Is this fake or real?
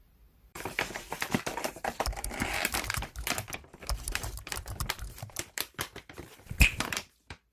fake